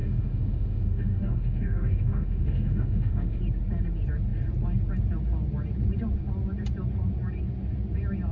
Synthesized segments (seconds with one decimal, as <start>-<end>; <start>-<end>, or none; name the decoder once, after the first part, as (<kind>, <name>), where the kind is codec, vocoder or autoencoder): 0.0-3.4 (autoencoder, DAC-VAE)

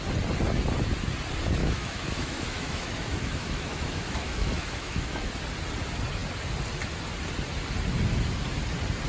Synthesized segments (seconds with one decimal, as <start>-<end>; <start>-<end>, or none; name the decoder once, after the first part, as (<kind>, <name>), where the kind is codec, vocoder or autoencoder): 1.6-5.3 (autoencoder, DAC-VAE)

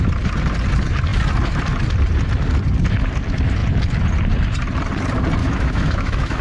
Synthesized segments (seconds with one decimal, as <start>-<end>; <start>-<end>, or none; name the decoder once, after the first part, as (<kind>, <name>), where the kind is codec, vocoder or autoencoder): 5.4-6.4 (autoencoder, DAC-VAE)

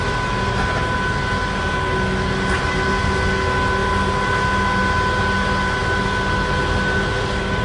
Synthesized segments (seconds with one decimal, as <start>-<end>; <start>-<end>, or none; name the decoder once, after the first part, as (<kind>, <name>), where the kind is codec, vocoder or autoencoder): none

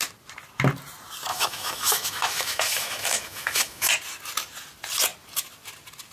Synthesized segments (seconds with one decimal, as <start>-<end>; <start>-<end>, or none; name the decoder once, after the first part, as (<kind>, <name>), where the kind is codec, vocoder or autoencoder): 1.3-3.9 (autoencoder, DAC-VAE)